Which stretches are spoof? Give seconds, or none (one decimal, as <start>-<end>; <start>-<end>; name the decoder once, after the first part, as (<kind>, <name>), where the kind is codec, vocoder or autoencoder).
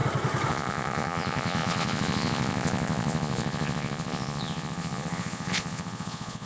0.5-6.5 (vocoder, Vocos)